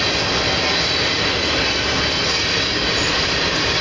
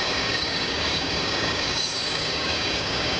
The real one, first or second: first